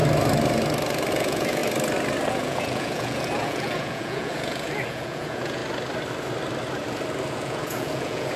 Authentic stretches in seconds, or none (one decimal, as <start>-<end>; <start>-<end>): 0.0-1.1; 1.6-2.3; 5.6-7.3